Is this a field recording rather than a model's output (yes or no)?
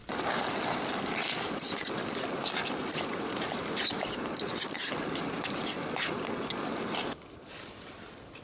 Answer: no